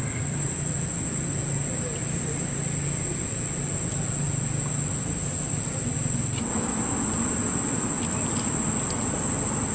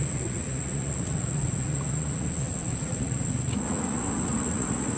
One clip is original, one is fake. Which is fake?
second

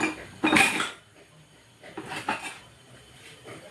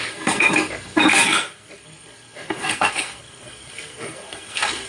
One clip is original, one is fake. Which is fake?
second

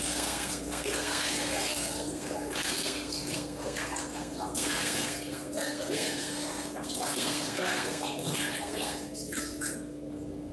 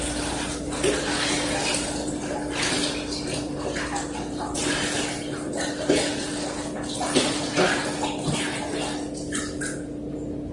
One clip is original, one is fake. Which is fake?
first